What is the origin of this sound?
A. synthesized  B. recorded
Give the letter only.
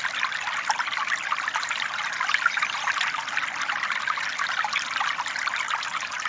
B